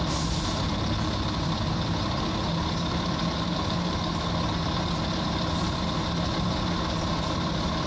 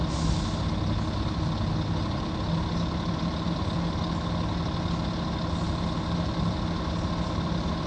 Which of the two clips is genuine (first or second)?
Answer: second